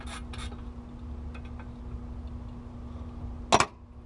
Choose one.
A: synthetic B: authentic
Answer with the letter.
B